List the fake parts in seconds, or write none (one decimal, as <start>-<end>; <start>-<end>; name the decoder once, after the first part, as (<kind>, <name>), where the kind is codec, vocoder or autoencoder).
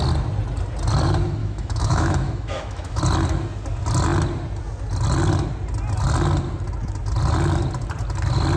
1.4-3.0 (autoencoder, DAC-VAE)